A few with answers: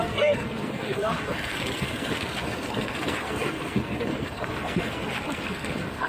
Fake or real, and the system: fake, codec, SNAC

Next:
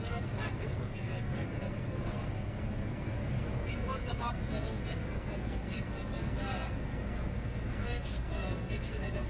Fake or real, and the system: fake, codec, SNAC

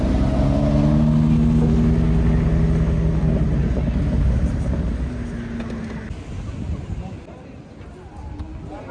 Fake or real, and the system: real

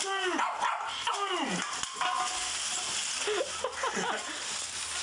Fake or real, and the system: real